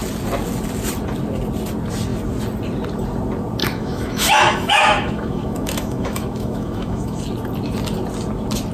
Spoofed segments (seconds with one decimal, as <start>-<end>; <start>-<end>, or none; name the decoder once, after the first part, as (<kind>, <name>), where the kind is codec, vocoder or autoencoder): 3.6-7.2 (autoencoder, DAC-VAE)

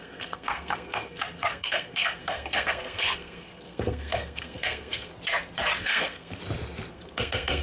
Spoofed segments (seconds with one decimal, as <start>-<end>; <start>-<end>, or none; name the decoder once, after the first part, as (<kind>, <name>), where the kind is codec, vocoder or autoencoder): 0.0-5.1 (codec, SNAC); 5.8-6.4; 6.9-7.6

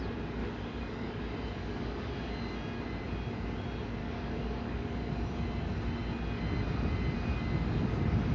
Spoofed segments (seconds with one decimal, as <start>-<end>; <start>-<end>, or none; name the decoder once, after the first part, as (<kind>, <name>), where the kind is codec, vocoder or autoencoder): 0.4-1.2 (codec, DAC); 1.6-2.1; 4.0-5.0

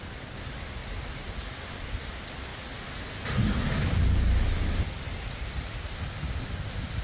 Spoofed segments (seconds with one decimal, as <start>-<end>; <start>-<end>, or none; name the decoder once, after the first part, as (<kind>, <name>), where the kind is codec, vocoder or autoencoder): none

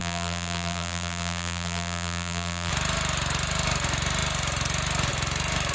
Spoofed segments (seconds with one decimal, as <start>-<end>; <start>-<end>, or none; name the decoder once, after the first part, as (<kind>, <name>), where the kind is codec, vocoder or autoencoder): 0.0-2.7 (vocoder, BigVGAN v2)